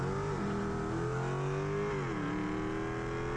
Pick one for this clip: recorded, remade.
recorded